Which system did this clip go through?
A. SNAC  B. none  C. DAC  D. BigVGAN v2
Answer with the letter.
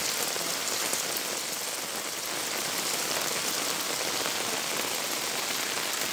B